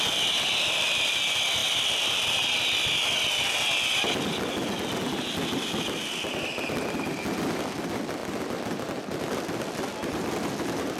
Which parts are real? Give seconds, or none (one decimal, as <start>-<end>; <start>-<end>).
0.0-11.0